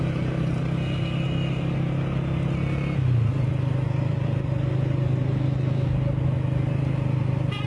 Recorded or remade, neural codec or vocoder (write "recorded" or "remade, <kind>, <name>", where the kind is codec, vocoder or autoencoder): recorded